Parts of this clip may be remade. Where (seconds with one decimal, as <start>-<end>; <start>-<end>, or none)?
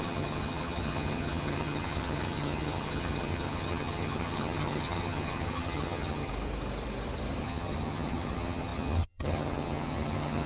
0.0-6.3; 7.4-10.5